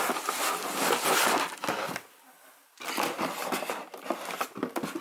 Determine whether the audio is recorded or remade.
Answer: recorded